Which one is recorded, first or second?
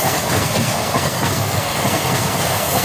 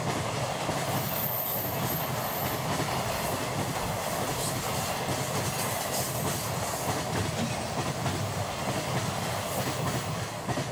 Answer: second